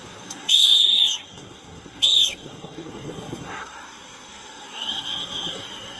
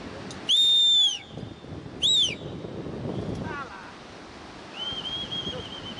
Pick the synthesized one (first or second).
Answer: first